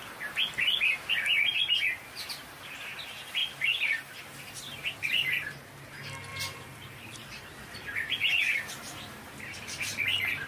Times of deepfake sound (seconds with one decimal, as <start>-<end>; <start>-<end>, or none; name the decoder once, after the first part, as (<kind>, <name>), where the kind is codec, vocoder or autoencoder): 6.3-8.3 (vocoder, BigVGAN v2)